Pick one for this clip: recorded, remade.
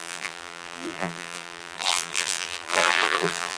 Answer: remade